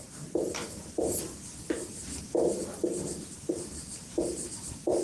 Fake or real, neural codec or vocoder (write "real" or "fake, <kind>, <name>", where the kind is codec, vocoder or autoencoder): fake, vocoder, BigVGAN v2